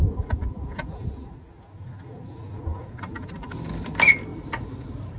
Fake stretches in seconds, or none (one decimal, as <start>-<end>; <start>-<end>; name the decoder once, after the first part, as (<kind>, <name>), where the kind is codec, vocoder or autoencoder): 4.3-5.2 (vocoder, BigVGAN v2)

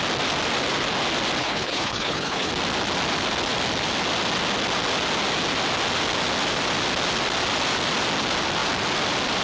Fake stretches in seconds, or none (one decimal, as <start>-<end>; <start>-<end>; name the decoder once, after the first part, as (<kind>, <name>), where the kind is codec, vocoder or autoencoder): 1.4-2.5 (codec, HILCodec)

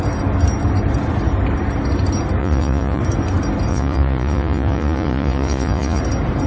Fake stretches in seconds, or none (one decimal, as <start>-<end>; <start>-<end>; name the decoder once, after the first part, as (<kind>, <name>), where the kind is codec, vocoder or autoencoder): 2.4-3.0 (vocoder, Vocos); 3.7-6.0

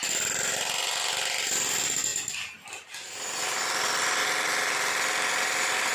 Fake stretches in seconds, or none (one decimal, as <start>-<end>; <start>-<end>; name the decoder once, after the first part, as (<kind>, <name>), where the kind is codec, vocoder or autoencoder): none

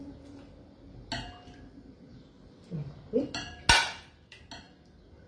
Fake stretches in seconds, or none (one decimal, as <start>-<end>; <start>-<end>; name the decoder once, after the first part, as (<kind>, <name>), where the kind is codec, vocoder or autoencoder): none

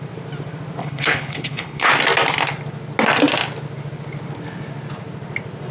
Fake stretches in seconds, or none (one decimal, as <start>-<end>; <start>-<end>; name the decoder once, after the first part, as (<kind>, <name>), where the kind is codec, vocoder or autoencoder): 0.8-1.9 (codec, HILCodec)

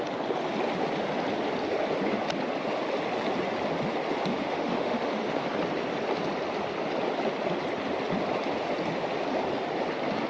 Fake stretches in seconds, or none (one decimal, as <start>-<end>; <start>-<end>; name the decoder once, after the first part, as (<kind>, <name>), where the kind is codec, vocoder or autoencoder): 4.3-5.1 (autoencoder, DAC-VAE)